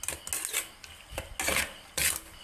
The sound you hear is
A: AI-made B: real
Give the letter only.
B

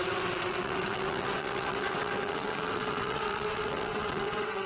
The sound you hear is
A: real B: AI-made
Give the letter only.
B